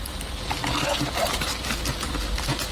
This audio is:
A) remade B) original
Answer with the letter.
B